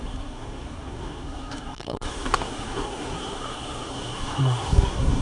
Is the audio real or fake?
fake